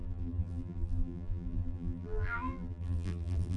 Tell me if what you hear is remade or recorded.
remade